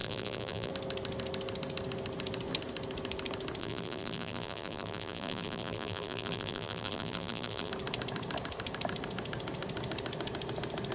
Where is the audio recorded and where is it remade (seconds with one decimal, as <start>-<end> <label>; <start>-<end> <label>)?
0.0-0.7 remade; 0.7-3.6 recorded; 3.6-7.7 remade; 7.7-10.9 recorded